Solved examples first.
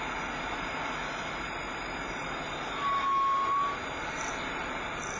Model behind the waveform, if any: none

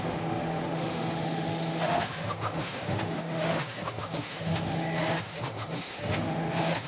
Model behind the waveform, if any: autoencoder, DAC-VAE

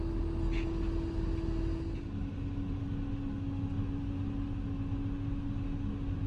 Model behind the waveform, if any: none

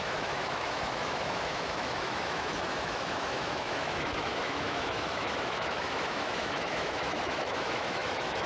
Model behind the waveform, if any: autoencoder, DAC-VAE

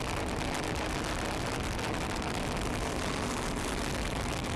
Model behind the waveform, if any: none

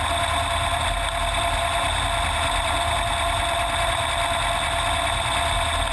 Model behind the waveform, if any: none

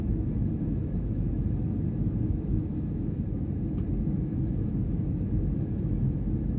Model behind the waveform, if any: autoencoder, DAC-VAE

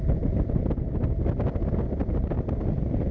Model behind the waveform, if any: none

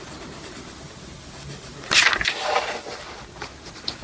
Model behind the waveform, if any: none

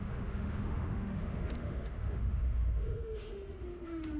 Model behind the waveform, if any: autoencoder, DAC-VAE